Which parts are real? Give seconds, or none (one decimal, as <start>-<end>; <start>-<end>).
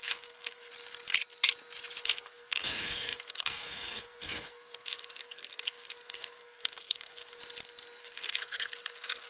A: 0.7-2.0; 7.4-8.0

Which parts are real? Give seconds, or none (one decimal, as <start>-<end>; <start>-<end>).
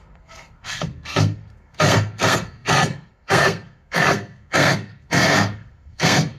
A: none